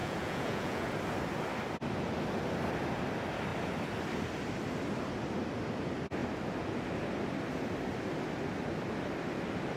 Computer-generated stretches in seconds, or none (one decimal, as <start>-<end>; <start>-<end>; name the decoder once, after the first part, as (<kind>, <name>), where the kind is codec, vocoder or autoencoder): 0.0-0.9 (vocoder, Vocos)